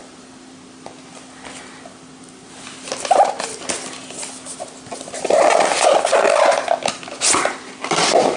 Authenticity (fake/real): real